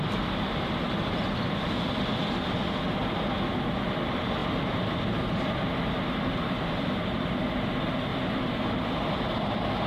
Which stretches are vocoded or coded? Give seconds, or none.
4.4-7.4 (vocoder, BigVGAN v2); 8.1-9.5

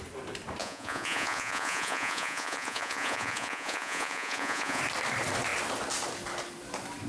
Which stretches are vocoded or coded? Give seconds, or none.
0.6-4.8 (vocoder, Vocos)

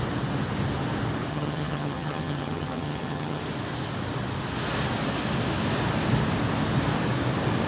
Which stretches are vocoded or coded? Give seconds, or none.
1.3-3.4 (vocoder, HiFi-GAN)

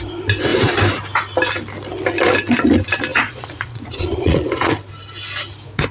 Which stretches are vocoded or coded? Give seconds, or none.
3.1-4.7 (vocoder, Vocos)

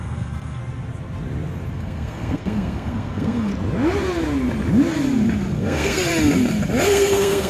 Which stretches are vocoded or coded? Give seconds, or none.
0.0-0.6 (codec, SNAC); 1.8-3.5; 5.5-6.1; 6.8-7.5

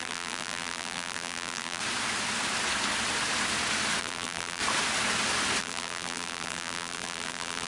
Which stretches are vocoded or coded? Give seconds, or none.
0.0-1.8 (vocoder, BigVGAN v2); 4.0-4.6; 5.6-7.7

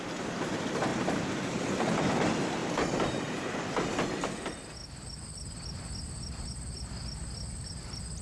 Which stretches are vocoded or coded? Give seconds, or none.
none

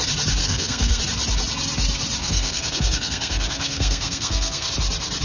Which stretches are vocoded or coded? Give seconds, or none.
0.4-1.0 (codec, SNAC); 2.2-4.7